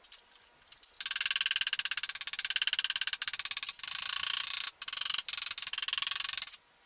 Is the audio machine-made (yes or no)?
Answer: no